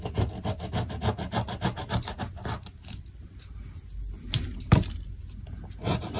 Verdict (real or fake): real